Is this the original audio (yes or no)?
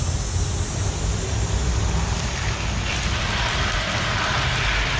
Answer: yes